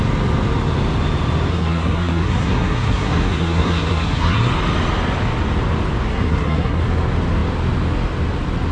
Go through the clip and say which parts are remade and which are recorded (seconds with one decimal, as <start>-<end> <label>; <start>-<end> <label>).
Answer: 0.0-1.5 recorded; 1.5-4.5 remade; 4.5-6.1 recorded; 6.1-6.8 remade; 6.8-8.7 recorded